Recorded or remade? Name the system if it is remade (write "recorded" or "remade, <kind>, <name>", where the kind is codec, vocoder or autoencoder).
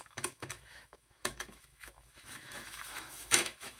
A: remade, autoencoder, DAC-VAE